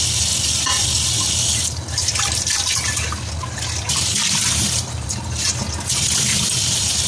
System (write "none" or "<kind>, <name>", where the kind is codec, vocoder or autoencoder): none